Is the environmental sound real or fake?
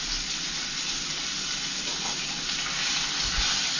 real